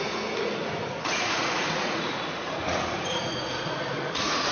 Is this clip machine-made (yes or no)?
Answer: yes